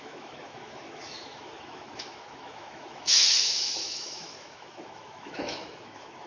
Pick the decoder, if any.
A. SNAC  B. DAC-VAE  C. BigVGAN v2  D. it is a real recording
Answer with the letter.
B